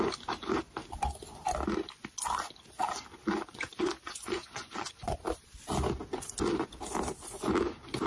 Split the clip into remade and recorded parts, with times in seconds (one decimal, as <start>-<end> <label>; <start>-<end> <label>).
0.0-3.5 recorded; 3.5-5.2 remade; 5.2-8.1 recorded